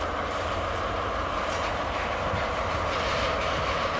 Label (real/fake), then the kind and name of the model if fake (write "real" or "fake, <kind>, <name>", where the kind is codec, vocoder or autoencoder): fake, vocoder, BigVGAN v2